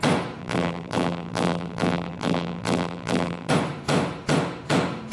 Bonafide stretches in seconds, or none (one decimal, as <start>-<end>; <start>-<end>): 0.0-0.4; 3.5-5.1